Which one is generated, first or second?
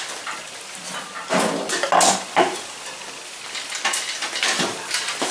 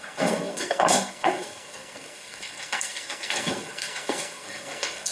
second